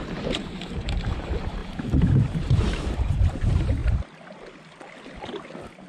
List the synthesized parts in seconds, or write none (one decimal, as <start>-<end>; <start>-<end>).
0.0-3.8